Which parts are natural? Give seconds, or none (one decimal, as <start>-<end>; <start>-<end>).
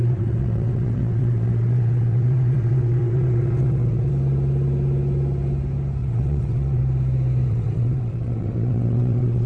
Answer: 4.1-6.0; 6.8-7.5